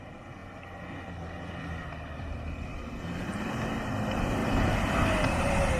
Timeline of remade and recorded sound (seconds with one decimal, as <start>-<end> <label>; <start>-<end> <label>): 0.0-4.4 recorded; 4.4-4.9 remade; 4.9-5.8 recorded